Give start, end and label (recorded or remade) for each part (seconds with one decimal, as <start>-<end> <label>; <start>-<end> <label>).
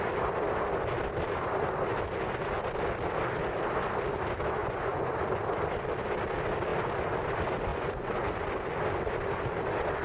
0.0-4.6 recorded; 4.6-5.1 remade; 5.1-7.7 recorded; 7.7-8.3 remade; 8.3-10.0 recorded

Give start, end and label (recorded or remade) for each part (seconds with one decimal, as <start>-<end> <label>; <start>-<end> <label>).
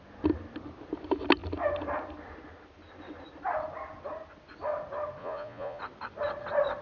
0.0-5.2 recorded; 5.2-5.8 remade; 5.8-6.8 recorded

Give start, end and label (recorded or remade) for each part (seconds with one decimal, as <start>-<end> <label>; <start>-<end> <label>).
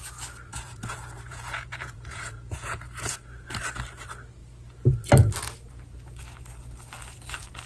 0.0-0.5 recorded; 0.5-3.1 remade; 3.1-7.7 recorded